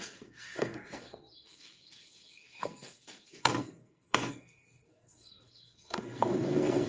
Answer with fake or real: fake